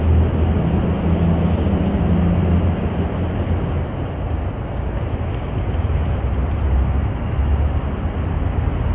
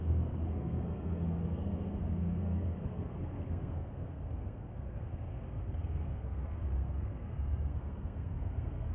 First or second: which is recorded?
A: first